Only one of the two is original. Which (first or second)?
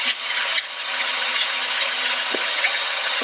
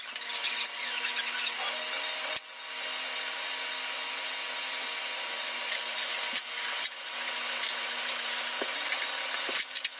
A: second